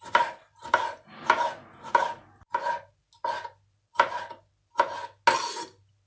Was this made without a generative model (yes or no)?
yes